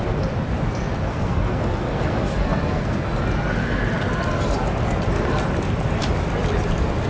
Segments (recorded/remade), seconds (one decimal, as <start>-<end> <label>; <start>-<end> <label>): 0.0-1.1 recorded; 1.1-3.1 remade; 3.1-7.1 recorded